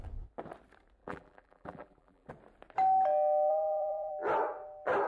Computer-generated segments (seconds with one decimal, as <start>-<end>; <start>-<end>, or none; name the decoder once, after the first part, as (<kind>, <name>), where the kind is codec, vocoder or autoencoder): 1.0-2.3 (vocoder, BigVGAN v2); 3.5-4.1